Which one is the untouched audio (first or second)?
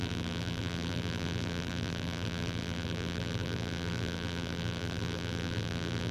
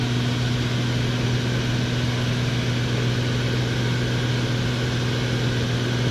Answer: second